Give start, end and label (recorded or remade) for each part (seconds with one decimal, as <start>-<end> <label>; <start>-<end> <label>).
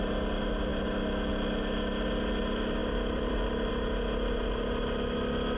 0.0-2.8 recorded; 2.8-3.7 remade; 3.7-5.6 recorded